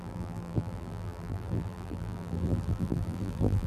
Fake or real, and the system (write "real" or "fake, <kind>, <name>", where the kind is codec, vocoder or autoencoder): fake, vocoder, BigVGAN v2